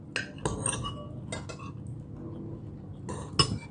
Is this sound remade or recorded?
recorded